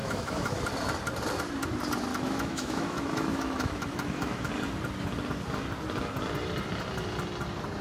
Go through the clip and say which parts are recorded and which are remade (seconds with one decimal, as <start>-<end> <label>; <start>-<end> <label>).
0.0-0.6 remade; 0.6-2.1 recorded; 2.1-4.5 remade; 4.5-7.8 recorded